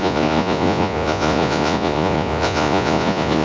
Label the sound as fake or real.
fake